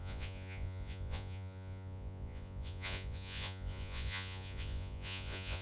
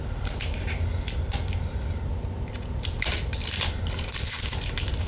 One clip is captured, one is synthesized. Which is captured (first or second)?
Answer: second